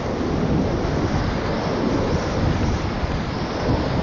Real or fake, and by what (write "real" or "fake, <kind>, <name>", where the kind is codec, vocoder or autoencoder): real